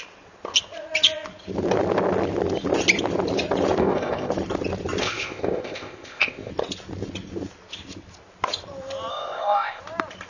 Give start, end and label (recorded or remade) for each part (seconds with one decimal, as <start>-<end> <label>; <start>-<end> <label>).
0.0-3.8 recorded; 3.8-4.3 remade; 4.3-5.0 recorded; 5.0-6.5 remade; 6.5-9.1 recorded; 9.1-9.8 remade; 9.8-10.3 recorded